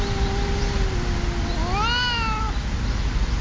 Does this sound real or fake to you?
real